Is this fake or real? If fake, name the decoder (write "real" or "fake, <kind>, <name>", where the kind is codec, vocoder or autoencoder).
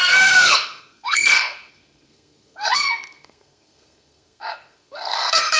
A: fake, codec, SNAC